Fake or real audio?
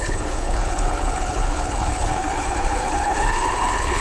fake